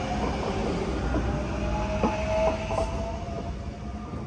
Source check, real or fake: real